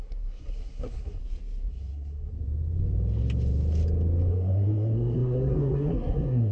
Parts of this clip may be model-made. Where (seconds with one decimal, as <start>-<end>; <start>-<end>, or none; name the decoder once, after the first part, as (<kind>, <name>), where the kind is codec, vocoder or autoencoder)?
0.0-1.2 (codec, SNAC); 1.7-2.3; 4.3-6.5